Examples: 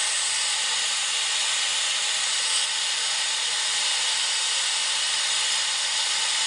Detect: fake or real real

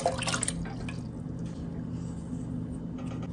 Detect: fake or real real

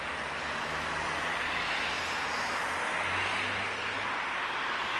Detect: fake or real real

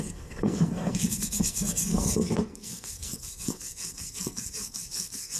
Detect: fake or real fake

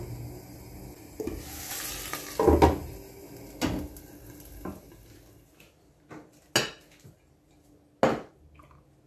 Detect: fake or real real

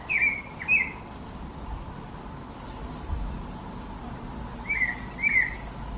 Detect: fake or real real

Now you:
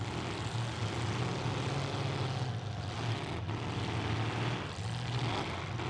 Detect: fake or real real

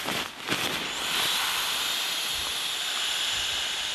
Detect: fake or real real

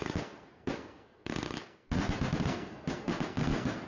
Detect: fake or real fake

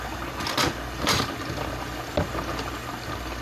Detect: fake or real real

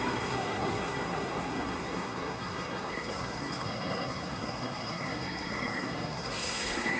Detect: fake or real fake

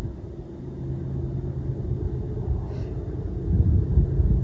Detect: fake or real real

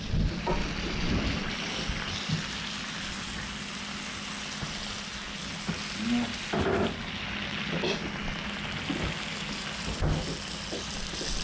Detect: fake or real real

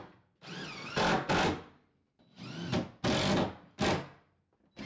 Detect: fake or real real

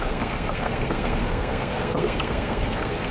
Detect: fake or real fake